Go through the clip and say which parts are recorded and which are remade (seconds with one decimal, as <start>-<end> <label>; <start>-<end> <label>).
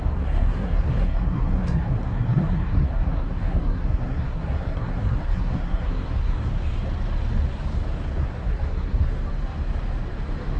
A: 0.0-6.5 remade; 6.5-8.2 recorded; 8.2-9.2 remade; 9.2-10.6 recorded